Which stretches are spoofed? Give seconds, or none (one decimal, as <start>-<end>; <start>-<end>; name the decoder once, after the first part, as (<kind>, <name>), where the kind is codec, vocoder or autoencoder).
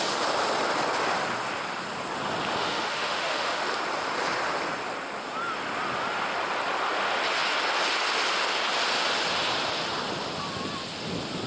2.6-3.6 (autoencoder, DAC-VAE)